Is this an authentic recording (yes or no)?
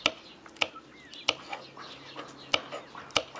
yes